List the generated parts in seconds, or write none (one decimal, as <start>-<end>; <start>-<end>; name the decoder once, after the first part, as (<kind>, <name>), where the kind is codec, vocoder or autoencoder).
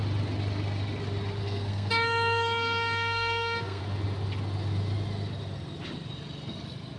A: 1.4-3.8 (codec, SNAC)